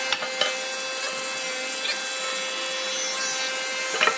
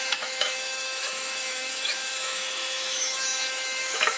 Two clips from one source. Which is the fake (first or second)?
second